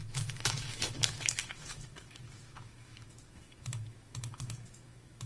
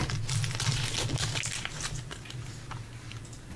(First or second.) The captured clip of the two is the second